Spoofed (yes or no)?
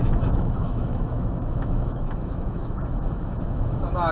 yes